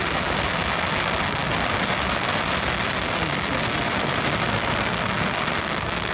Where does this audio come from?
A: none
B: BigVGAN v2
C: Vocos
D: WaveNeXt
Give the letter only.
A